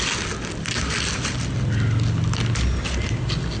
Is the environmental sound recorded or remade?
recorded